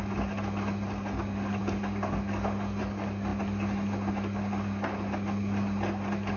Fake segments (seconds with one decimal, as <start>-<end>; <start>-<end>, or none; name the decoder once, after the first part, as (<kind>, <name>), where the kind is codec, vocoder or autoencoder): none